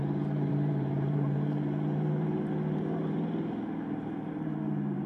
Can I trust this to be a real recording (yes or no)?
no